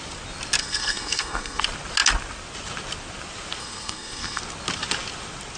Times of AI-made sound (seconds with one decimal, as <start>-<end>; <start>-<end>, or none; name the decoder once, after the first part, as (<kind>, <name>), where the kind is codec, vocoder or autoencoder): 0.6-1.6 (codec, SNAC); 3.6-4.4